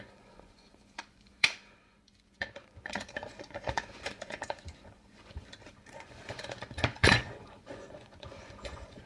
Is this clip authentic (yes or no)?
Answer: no